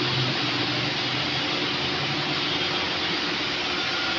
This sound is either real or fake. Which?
real